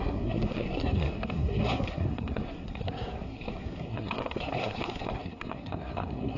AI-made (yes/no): yes